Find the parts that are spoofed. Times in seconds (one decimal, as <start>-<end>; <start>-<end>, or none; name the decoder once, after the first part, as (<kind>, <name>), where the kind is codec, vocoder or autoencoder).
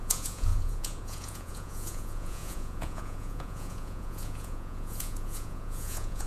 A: 0.0-6.3 (vocoder, Vocos)